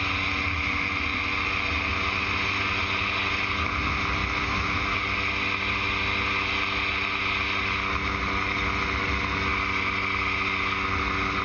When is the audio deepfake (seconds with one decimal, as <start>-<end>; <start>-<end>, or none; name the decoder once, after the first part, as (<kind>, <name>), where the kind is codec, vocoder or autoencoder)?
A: none